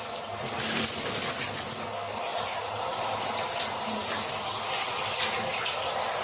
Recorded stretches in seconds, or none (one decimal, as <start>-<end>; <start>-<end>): 0.0-2.3; 5.0-6.2